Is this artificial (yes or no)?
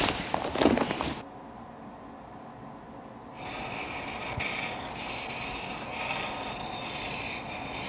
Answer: no